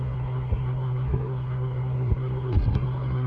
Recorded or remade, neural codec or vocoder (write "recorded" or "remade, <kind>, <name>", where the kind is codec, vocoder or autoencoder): remade, codec, SNAC